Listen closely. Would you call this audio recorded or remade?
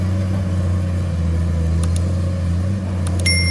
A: recorded